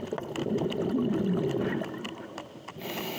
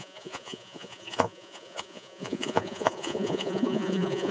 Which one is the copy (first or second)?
second